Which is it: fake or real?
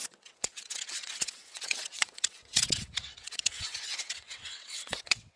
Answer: fake